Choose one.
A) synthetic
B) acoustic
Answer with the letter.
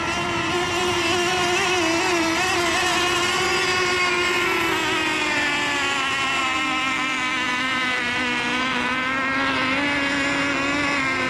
B